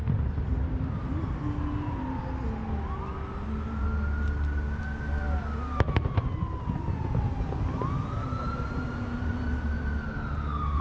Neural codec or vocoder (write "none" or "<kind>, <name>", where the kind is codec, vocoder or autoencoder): none